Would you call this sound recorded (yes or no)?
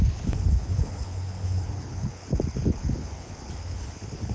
no